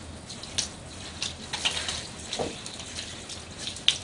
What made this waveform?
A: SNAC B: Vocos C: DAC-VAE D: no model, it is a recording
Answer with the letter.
D